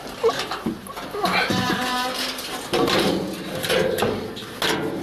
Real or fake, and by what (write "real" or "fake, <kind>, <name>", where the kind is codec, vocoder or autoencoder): real